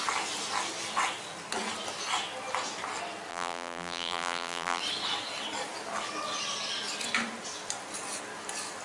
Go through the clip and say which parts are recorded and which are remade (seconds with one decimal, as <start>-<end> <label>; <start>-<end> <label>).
0.0-3.3 recorded; 3.3-4.8 remade; 4.8-8.8 recorded